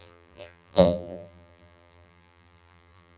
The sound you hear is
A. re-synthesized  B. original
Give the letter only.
A